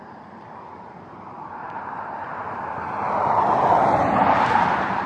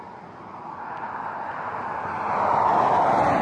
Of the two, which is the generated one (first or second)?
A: first